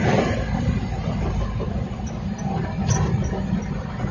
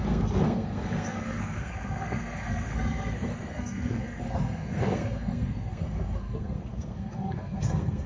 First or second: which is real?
first